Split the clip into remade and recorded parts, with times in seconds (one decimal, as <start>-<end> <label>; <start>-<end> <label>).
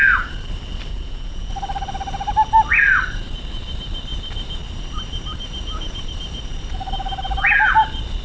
0.0-0.9 recorded; 0.9-1.5 remade; 1.5-8.2 recorded